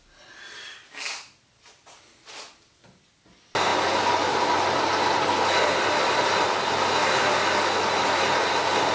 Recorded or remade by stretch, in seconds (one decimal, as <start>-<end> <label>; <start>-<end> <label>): 0.0-8.9 recorded